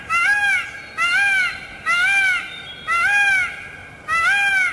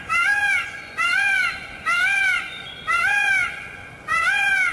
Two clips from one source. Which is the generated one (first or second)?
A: second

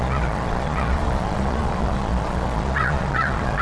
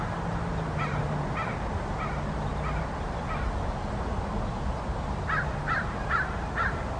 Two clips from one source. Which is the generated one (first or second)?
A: first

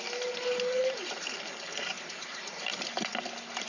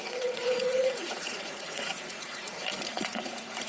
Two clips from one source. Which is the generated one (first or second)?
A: second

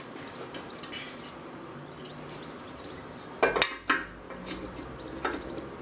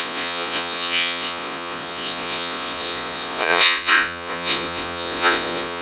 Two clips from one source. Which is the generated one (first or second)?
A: second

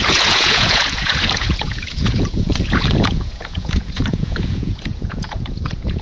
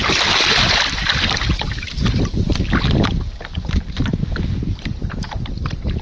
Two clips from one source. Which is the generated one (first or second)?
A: first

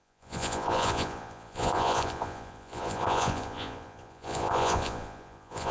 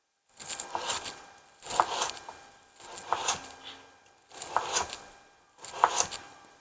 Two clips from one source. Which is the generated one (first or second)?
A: first